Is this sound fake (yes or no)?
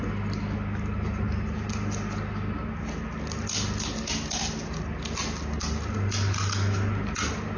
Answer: no